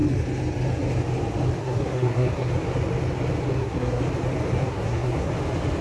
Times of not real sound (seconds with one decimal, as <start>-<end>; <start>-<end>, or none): 1.6-2.5; 3.5-4.0; 4.6-5.3